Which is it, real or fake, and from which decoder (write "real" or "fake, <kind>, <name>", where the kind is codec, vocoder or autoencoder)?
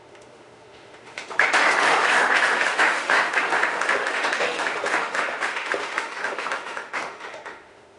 fake, autoencoder, DAC-VAE